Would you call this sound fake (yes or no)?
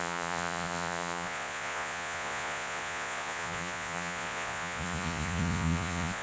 yes